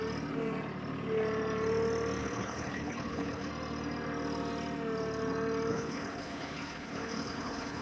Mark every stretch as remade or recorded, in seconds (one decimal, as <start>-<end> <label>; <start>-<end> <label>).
0.0-2.2 recorded; 2.2-3.5 remade; 3.5-5.7 recorded; 5.7-7.8 remade